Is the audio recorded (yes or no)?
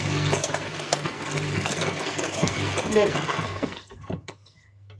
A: no